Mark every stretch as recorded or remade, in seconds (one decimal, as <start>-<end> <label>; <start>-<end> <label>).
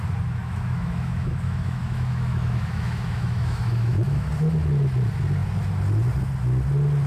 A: 0.0-0.4 recorded; 0.4-4.3 remade; 4.3-7.1 recorded